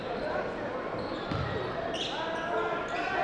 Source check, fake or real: real